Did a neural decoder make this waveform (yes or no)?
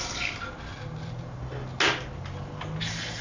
no